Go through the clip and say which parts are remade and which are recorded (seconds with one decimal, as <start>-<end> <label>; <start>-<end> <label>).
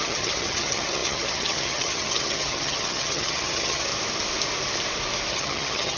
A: 0.0-3.9 remade; 3.9-5.3 recorded; 5.3-6.0 remade